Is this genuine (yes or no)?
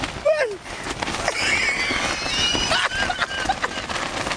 yes